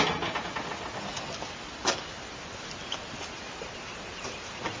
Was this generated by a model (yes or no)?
no